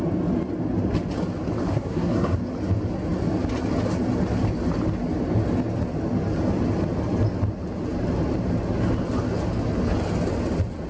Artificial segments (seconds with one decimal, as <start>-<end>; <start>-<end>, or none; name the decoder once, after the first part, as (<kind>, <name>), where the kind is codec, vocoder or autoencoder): 1.7-2.4 (codec, SNAC)